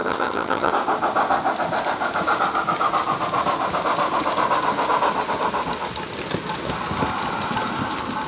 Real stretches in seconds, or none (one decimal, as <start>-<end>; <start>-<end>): 0.7-8.3